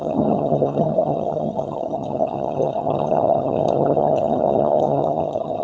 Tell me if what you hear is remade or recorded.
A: remade